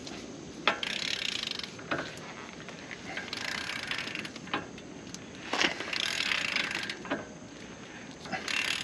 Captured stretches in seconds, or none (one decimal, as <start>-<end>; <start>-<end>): 0.0-8.8